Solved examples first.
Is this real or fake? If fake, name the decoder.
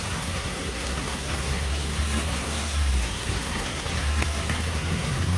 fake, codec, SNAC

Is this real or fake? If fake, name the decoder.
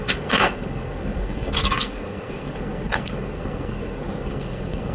fake, codec, SNAC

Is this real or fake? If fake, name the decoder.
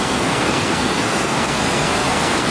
fake, codec, SNAC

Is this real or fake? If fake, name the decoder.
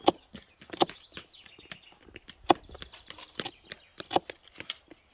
real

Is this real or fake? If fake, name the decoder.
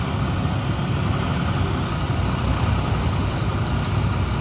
real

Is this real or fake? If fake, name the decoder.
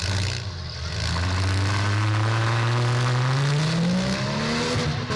real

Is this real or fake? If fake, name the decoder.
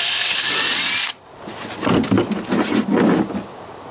real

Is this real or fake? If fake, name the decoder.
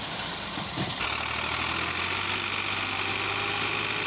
real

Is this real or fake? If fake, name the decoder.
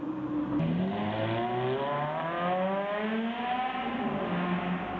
real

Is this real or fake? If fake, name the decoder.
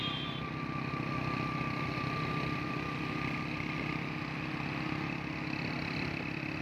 real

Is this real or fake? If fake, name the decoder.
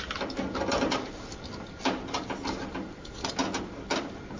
real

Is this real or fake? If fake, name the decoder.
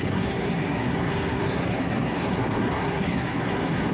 fake, codec, SNAC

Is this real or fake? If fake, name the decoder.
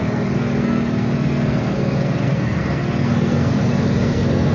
fake, codec, SNAC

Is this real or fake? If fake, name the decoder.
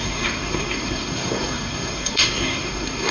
fake, codec, SNAC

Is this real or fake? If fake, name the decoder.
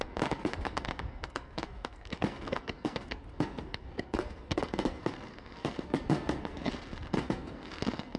fake, codec, SNAC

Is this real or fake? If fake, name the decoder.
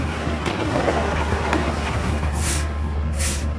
fake, codec, SNAC